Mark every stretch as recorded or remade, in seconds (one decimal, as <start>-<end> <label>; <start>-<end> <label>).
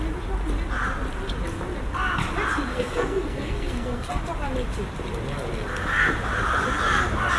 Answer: 0.0-2.7 recorded; 2.7-4.2 remade; 4.2-7.4 recorded